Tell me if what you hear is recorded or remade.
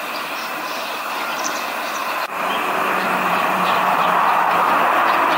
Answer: remade